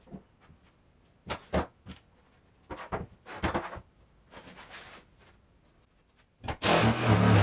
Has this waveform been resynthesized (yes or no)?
no